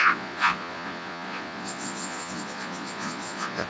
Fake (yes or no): yes